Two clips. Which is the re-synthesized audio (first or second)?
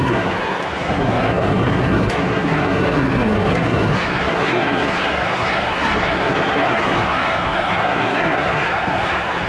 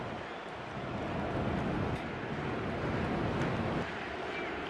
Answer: first